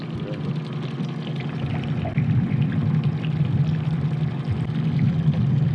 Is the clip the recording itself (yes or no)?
yes